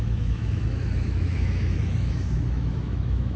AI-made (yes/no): yes